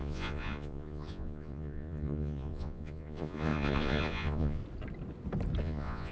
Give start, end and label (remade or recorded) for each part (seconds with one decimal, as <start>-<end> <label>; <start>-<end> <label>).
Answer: 0.0-4.6 remade; 4.6-5.6 recorded; 5.6-6.1 remade